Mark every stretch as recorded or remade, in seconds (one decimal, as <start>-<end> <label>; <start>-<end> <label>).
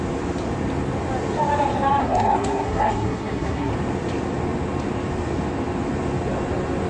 0.0-2.0 recorded; 2.0-3.7 remade; 3.7-6.9 recorded